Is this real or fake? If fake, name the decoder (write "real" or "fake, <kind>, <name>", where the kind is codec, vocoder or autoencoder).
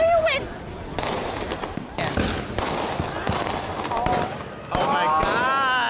real